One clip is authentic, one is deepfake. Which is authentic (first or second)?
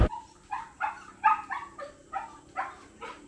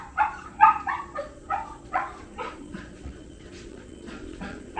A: first